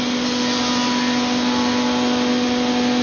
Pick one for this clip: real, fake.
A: real